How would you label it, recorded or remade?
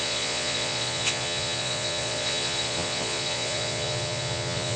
remade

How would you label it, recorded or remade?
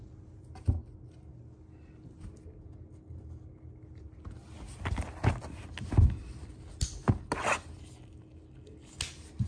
recorded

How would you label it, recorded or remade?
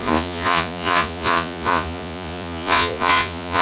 remade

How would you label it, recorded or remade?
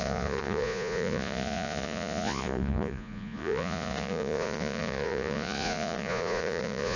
remade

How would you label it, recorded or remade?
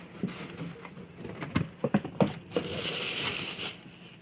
recorded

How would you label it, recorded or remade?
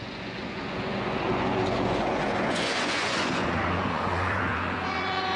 remade